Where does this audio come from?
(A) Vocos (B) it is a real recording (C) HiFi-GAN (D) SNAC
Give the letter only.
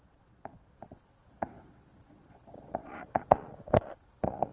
A